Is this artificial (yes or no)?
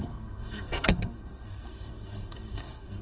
yes